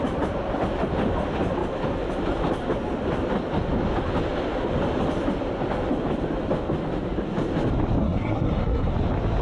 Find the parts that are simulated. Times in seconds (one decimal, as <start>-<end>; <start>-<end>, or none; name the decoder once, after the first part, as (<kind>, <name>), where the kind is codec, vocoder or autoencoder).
8.0-8.9 (codec, SNAC)